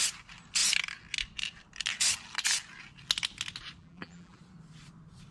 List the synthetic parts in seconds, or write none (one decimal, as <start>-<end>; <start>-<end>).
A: 3.8-4.4